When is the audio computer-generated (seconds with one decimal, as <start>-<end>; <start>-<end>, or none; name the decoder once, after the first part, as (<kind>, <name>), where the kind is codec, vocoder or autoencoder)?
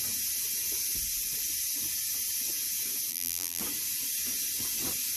3.1-3.6 (vocoder, BigVGAN v2)